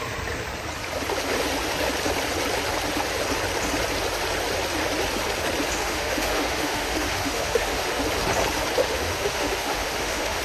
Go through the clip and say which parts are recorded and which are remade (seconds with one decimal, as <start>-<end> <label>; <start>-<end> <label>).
0.0-5.8 recorded; 5.8-8.0 remade; 8.0-8.8 recorded; 8.8-10.4 remade